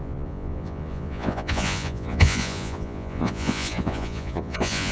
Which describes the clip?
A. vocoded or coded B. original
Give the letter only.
A